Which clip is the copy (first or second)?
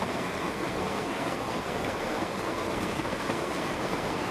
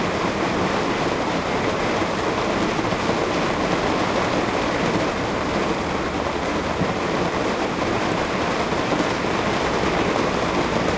first